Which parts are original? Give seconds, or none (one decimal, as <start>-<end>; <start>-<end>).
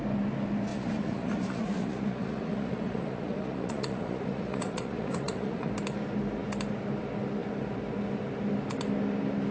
0.0-0.7; 5.7-9.5